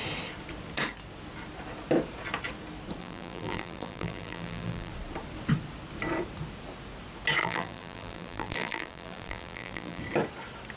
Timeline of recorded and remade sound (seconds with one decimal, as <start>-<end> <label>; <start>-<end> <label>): 0.0-3.0 recorded; 3.0-4.9 remade; 4.9-7.4 recorded; 7.4-10.0 remade; 10.0-10.8 recorded